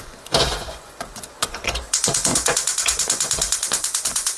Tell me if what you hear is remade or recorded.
remade